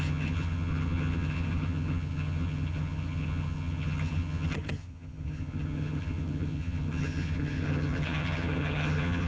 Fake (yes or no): yes